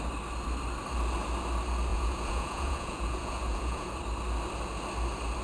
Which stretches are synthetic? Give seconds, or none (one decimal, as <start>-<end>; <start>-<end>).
1.9-4.0